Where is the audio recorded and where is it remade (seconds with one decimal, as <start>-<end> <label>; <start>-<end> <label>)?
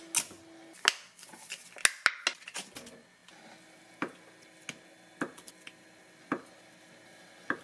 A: 0.0-3.2 recorded; 3.2-3.9 remade; 3.9-7.6 recorded